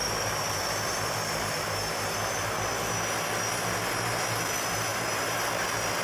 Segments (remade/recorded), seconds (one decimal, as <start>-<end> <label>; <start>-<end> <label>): 0.0-2.6 remade; 2.6-6.0 recorded